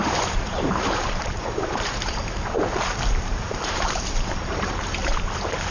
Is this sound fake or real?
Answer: fake